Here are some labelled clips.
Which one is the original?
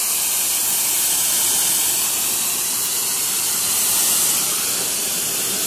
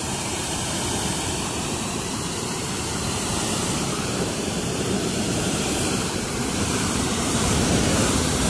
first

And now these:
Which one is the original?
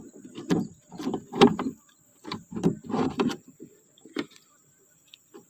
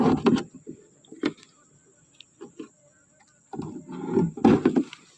second